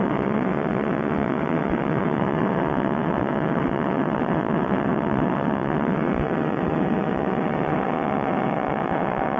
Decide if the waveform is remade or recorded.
remade